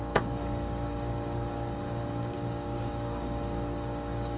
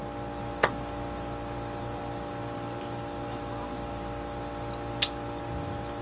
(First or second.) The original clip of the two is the second